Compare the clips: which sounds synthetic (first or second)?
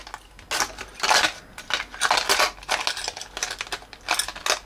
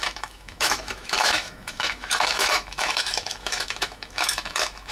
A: second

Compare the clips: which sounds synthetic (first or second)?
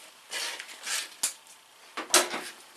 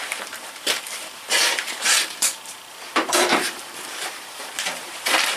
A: second